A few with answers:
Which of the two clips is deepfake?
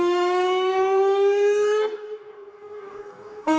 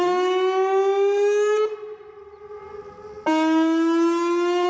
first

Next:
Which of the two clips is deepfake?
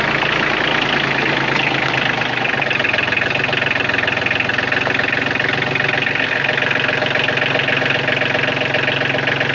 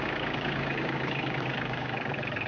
second